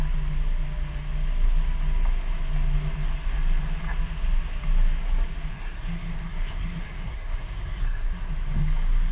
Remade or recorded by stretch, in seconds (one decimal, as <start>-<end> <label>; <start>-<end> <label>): 0.0-5.5 recorded; 5.5-8.3 remade; 8.3-9.1 recorded